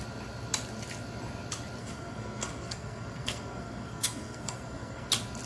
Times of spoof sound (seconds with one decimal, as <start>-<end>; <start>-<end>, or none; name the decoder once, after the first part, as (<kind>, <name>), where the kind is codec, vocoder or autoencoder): 1.8-5.1 (codec, SNAC)